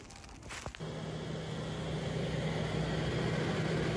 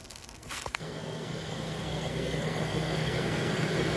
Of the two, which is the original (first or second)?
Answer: first